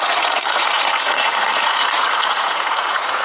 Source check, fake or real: fake